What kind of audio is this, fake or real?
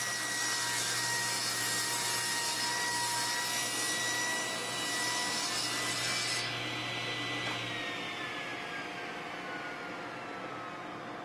real